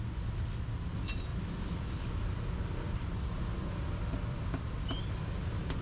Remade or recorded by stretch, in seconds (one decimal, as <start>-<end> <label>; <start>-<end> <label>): 0.0-1.3 recorded; 1.3-4.8 remade; 4.8-5.8 recorded